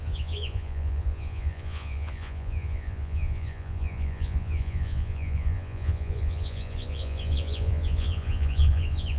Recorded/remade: remade